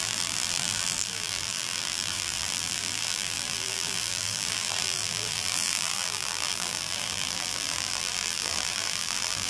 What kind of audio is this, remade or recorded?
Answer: remade